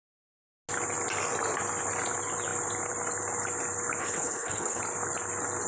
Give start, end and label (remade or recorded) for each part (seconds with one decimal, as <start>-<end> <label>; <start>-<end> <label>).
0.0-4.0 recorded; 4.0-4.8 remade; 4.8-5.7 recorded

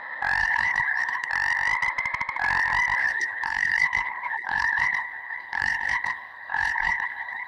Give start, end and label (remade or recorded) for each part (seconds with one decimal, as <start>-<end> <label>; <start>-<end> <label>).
0.0-0.4 recorded; 0.4-1.3 remade; 1.3-3.0 recorded; 3.0-7.5 remade

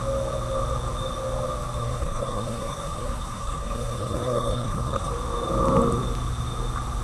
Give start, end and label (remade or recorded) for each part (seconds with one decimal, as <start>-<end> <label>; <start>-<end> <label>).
0.0-1.8 recorded; 1.8-5.1 remade; 5.1-7.0 recorded

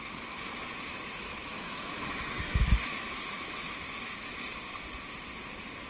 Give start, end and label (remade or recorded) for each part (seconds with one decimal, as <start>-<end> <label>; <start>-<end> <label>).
0.0-0.9 recorded; 0.9-4.4 remade; 4.4-5.9 recorded

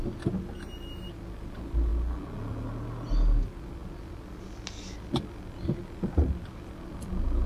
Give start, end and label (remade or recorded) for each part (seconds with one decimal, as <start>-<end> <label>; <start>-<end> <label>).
0.0-7.5 recorded

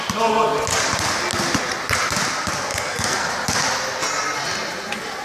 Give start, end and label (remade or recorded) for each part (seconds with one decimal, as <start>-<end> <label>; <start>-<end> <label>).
0.0-2.7 recorded; 2.7-3.3 remade; 3.3-5.2 recorded

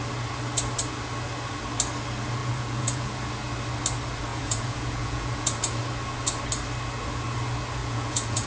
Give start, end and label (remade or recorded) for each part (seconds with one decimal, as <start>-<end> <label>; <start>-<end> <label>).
0.0-2.4 recorded; 2.4-3.2 remade; 3.2-4.3 recorded; 4.3-5.8 remade; 5.8-7.8 recorded; 7.8-8.5 remade